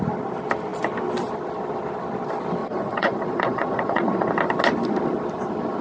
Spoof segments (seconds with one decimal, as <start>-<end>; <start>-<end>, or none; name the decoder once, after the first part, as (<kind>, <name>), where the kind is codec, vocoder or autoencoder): 2.6-4.3 (vocoder, Vocos)

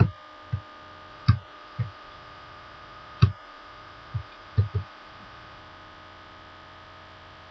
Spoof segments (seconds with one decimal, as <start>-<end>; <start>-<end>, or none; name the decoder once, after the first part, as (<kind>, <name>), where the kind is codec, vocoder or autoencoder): 1.1-5.6 (vocoder, Vocos)